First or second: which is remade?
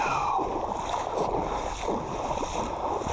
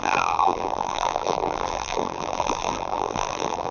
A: second